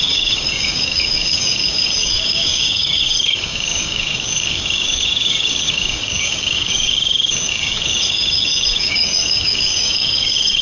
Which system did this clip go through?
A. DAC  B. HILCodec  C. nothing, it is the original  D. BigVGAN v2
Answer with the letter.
A